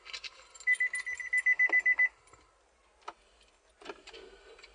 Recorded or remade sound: recorded